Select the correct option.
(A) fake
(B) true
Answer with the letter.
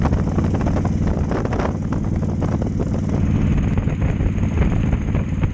B